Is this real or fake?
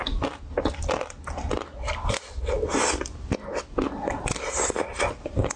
real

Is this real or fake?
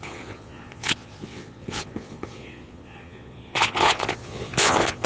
fake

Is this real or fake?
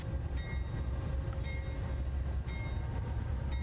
real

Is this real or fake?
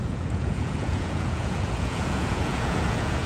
fake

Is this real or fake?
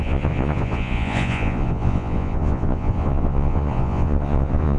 fake